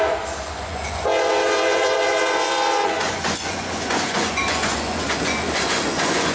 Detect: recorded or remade remade